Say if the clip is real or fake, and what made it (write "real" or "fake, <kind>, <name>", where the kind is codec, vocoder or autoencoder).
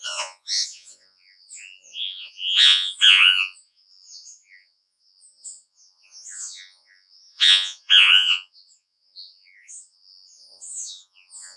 fake, vocoder, Vocos